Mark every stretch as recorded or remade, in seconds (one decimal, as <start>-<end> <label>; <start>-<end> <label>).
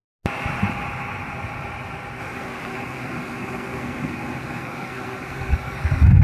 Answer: 0.0-2.2 recorded; 2.2-6.2 remade